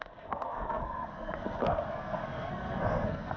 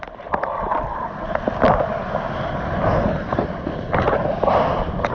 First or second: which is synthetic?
first